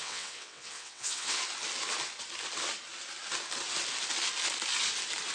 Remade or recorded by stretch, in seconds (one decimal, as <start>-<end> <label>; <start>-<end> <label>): 0.0-1.4 remade; 1.4-5.3 recorded